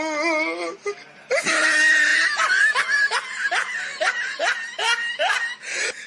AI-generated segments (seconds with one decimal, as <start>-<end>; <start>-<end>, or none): none